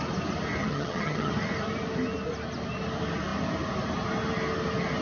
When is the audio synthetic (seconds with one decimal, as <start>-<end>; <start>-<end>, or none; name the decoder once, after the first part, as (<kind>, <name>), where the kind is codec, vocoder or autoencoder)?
0.6-1.3 (vocoder, HiFi-GAN)

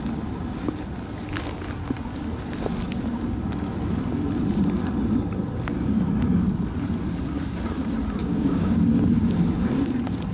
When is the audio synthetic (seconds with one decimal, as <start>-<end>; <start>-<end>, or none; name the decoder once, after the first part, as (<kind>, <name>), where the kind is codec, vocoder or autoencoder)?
8.2-8.8 (codec, DAC)

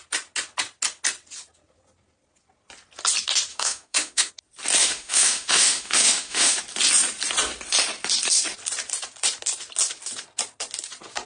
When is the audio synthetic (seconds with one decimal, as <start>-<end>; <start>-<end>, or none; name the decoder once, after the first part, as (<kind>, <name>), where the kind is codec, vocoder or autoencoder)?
3.5-4.3 (autoencoder, DAC-VAE); 4.8-6.6

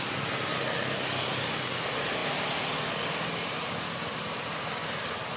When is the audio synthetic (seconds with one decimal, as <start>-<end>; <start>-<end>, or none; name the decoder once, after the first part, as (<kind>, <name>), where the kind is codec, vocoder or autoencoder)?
none

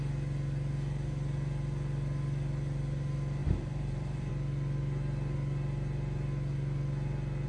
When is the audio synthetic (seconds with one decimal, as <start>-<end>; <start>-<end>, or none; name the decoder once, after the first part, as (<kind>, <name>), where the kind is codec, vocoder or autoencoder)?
3.4-4.3 (vocoder, BigVGAN v2)

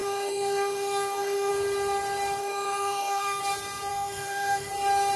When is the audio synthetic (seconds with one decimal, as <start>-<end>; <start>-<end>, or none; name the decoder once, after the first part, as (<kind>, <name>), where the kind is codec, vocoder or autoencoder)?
0.0-1.5 (autoencoder, DAC-VAE); 2.4-3.4; 3.9-4.7

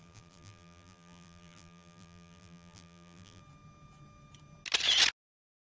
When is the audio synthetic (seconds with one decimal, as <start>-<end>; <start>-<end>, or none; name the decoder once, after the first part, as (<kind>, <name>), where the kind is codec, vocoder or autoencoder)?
0.0-3.4 (vocoder, BigVGAN v2)

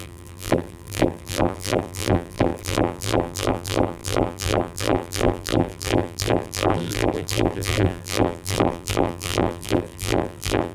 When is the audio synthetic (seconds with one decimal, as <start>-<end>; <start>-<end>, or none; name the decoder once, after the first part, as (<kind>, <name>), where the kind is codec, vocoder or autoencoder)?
0.0-10.7 (vocoder, BigVGAN v2)